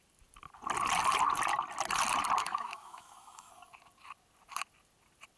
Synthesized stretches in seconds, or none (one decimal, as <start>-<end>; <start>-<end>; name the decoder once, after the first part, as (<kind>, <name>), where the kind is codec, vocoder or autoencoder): 2.4-3.5 (autoencoder, DAC-VAE)